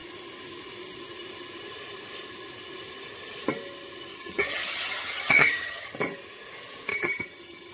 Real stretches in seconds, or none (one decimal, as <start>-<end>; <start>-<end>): 0.0-4.1; 5.9-6.9